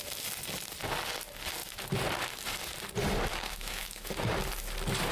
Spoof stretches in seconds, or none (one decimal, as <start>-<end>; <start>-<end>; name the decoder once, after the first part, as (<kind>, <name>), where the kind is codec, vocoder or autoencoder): 3.3-4.1 (autoencoder, DAC-VAE)